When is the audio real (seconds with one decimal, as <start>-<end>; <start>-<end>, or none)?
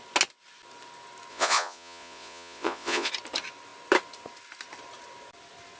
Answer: 0.0-1.3; 3.1-5.8